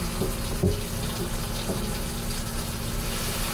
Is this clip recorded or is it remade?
recorded